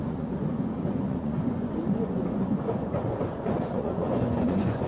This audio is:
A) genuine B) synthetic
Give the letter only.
B